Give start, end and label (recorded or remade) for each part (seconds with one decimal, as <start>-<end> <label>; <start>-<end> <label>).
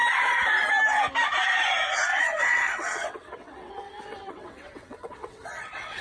0.0-2.1 recorded; 2.1-6.0 remade